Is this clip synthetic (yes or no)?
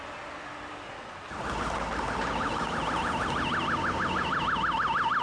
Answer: no